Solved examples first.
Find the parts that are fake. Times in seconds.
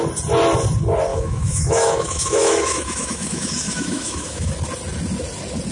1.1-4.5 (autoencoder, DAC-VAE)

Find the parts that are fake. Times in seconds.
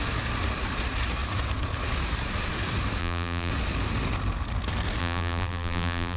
3.0-3.5 (vocoder, BigVGAN v2); 5.0-6.2